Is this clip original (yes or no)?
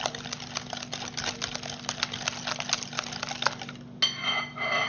yes